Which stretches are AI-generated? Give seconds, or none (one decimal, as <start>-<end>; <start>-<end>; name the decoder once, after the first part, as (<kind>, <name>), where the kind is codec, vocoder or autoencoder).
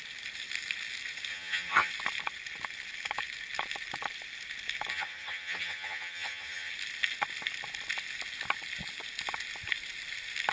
1.3-1.9 (vocoder, HiFi-GAN); 4.9-6.7